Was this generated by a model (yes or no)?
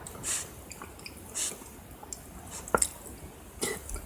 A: no